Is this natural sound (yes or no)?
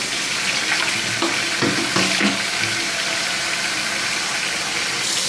yes